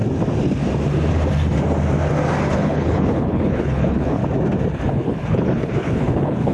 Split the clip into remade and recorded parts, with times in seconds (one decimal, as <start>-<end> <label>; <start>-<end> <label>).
0.0-2.5 recorded; 2.5-4.2 remade; 4.2-4.9 recorded; 4.9-6.5 remade